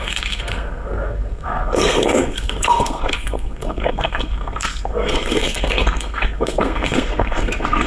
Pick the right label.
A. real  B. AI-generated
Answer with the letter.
B